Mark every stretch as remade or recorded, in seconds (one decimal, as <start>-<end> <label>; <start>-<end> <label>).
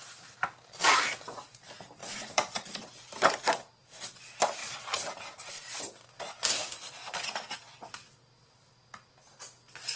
0.0-2.0 recorded; 2.0-3.7 remade; 3.7-4.6 recorded; 4.6-5.8 remade; 5.8-10.0 recorded